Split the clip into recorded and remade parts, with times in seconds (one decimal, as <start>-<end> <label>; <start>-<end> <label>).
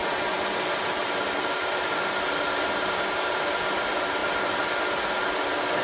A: 0.0-5.8 recorded